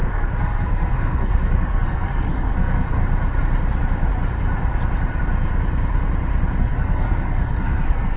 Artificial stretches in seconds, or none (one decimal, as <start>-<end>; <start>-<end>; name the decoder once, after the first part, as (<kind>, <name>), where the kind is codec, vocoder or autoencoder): 0.0-3.0 (codec, SNAC); 6.6-8.2